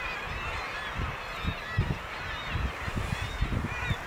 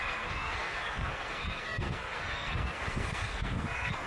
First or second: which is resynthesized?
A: second